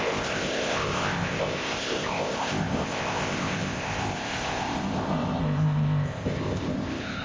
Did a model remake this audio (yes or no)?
yes